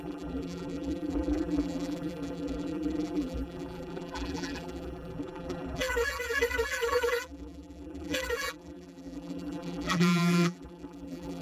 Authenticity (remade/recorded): remade